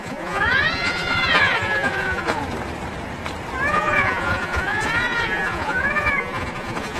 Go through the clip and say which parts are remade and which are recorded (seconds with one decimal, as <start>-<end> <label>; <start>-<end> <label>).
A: 0.0-2.4 remade; 2.4-3.7 recorded; 3.7-7.0 remade